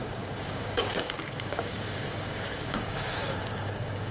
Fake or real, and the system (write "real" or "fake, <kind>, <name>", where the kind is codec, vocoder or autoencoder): fake, codec, DAC